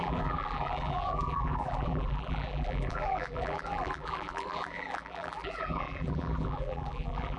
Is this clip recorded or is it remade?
remade